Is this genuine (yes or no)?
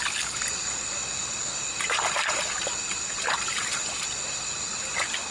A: yes